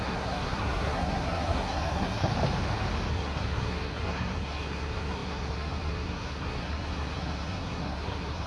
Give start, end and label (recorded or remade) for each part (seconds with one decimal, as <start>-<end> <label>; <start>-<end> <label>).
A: 0.0-2.3 remade; 2.3-3.1 recorded; 3.1-8.5 remade